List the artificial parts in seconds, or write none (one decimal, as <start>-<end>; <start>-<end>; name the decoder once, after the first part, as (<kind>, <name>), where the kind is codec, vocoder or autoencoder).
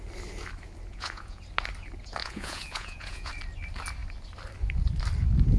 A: 0.9-1.4 (vocoder, Vocos); 2.2-3.3